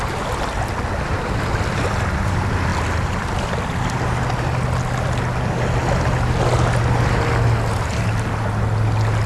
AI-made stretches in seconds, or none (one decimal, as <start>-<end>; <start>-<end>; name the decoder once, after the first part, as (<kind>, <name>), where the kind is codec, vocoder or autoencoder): none